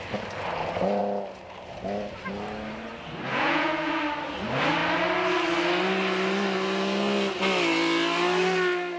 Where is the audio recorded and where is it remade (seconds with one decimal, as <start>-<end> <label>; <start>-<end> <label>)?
0.0-3.3 recorded; 3.3-3.9 remade; 3.9-9.0 recorded